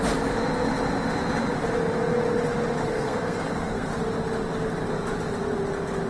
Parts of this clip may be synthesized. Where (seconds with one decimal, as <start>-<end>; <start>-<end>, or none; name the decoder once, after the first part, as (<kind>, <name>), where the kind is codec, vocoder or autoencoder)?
2.8-3.9 (codec, SNAC)